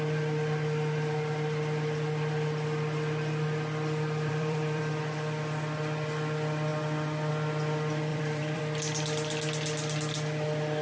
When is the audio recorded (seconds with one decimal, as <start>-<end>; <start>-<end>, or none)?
0.0-4.3; 4.8-8.1; 8.6-10.8